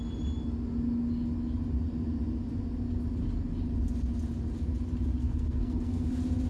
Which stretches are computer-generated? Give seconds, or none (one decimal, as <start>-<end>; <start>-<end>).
5.2-6.1